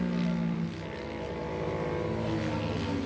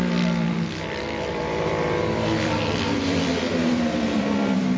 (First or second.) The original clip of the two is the first